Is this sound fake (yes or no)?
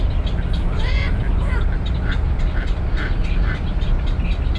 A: no